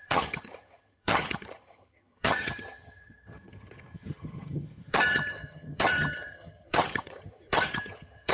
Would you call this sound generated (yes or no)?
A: yes